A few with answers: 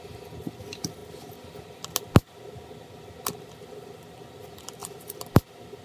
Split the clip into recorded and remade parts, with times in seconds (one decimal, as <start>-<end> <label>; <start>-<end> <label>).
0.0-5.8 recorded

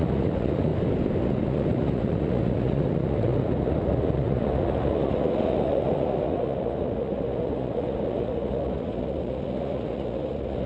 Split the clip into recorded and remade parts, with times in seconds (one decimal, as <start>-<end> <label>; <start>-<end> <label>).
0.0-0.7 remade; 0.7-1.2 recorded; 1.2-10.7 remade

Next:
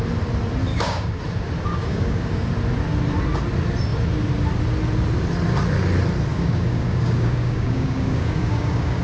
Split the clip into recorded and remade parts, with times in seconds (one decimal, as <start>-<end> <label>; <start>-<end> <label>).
0.0-0.7 recorded; 0.7-1.2 remade; 1.2-1.7 recorded; 1.7-2.5 remade; 2.5-6.3 recorded; 6.3-9.0 remade

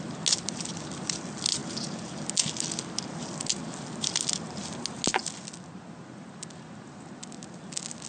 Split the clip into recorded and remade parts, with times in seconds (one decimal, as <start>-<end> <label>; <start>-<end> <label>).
0.0-8.1 recorded

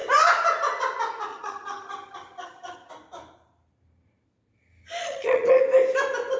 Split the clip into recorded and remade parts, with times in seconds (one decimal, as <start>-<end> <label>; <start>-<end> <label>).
0.0-1.3 recorded; 1.3-2.9 remade; 2.9-5.0 recorded; 5.0-5.6 remade; 5.6-6.4 recorded

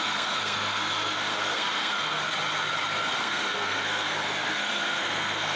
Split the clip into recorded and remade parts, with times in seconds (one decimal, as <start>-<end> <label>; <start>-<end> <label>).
0.0-2.2 remade; 2.2-3.2 recorded; 3.2-5.6 remade

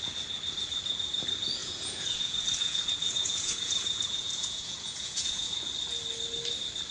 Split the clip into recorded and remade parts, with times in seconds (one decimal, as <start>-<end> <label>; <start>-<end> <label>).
0.0-1.6 recorded; 1.6-5.7 remade; 5.7-6.9 recorded

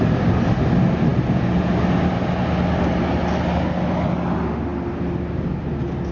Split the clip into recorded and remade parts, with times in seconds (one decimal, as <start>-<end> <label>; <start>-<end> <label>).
0.0-6.1 recorded